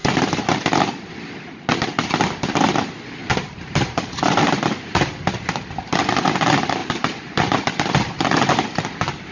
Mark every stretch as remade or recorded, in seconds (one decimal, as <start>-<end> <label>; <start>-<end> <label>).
0.0-0.8 remade; 0.8-3.2 recorded; 3.2-4.9 remade; 4.9-6.8 recorded; 6.8-7.9 remade; 7.9-9.3 recorded